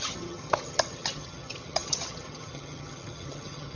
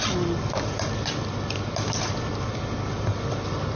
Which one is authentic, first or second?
second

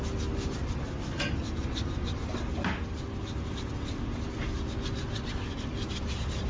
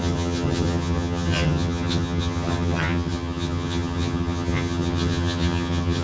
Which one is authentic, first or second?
first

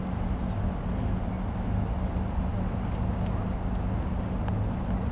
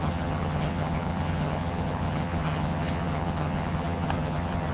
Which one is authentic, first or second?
first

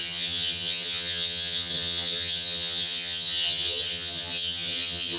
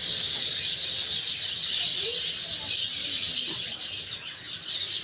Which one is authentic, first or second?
second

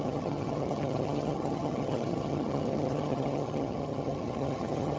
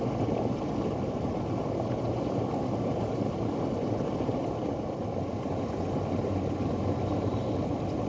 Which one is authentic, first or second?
second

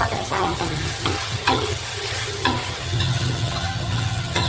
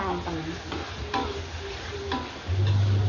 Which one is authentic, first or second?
second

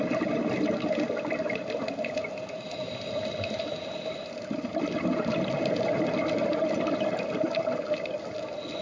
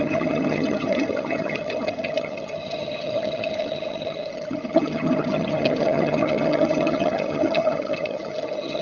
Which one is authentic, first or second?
first